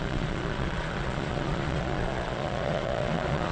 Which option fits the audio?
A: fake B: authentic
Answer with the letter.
A